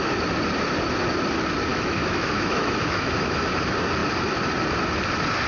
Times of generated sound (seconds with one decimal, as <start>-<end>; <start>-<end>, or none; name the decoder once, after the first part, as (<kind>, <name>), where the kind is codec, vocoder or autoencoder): 1.7-3.5 (autoencoder, DAC-VAE)

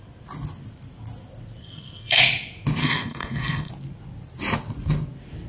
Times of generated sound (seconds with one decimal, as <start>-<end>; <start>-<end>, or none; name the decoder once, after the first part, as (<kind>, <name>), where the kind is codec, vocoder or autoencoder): 1.6-2.2 (codec, SNAC); 2.8-3.7

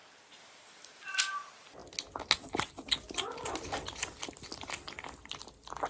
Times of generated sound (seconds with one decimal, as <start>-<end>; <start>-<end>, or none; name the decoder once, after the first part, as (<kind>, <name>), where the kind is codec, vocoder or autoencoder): 0.0-1.3 (vocoder, BigVGAN v2)

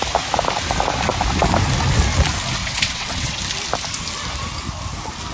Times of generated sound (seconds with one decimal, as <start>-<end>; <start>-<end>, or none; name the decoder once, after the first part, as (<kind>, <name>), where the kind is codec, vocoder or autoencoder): 2.6-3.4 (vocoder, WaveNeXt)

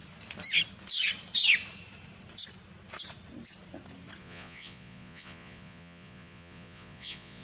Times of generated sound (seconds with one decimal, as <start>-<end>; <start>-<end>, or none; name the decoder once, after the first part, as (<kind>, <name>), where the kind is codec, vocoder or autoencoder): 4.2-7.4 (vocoder, Vocos)

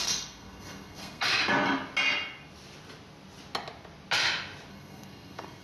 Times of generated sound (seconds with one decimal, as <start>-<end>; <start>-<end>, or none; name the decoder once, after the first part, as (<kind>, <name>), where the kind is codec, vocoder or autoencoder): 0.0-1.3 (codec, SNAC); 4.7-5.6

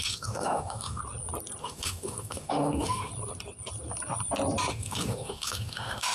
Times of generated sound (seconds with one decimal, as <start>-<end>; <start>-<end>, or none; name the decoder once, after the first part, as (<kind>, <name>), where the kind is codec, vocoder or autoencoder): 0.0-1.0 (autoencoder, DAC-VAE); 1.6-3.1; 4.7-6.1